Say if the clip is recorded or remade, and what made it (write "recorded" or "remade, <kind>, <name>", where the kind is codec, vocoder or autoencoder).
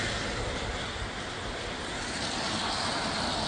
recorded